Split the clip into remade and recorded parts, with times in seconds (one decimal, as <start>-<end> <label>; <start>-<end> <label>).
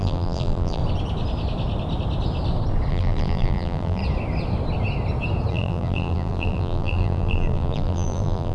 0.0-0.8 remade; 0.8-2.9 recorded; 2.9-4.0 remade; 4.0-5.5 recorded; 5.5-8.5 remade